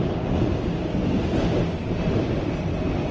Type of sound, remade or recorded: recorded